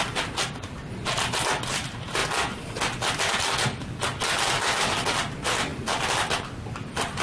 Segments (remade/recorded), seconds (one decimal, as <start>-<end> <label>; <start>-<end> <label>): 0.0-7.2 recorded